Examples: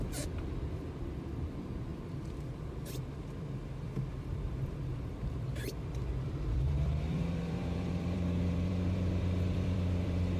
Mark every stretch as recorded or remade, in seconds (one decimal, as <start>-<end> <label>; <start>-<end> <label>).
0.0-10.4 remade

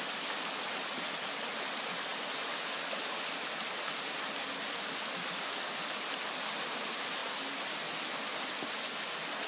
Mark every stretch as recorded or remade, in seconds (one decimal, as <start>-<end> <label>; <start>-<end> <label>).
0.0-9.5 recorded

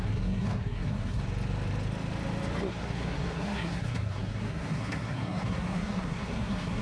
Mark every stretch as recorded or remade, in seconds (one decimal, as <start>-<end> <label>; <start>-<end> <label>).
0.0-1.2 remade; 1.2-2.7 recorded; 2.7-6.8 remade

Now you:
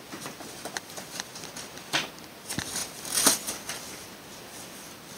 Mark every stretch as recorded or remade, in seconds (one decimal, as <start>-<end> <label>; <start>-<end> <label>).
0.0-0.8 recorded; 0.8-1.3 remade; 1.3-2.2 recorded; 2.2-5.2 remade

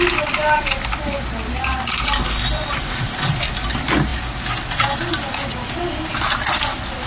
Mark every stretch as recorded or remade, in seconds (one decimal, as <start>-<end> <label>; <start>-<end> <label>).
0.0-7.1 recorded

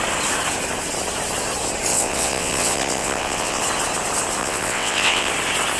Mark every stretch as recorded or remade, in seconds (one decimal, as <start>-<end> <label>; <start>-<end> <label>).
0.0-1.9 recorded; 1.9-3.6 remade; 3.6-4.4 recorded; 4.4-5.3 remade; 5.3-5.8 recorded